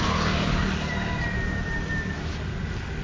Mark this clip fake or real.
real